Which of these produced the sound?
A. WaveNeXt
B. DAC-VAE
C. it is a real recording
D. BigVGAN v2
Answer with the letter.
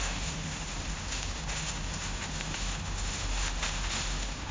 B